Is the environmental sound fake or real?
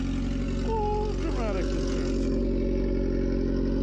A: real